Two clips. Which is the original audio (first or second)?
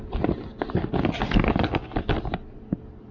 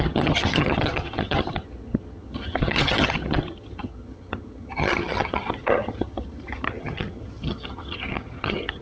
first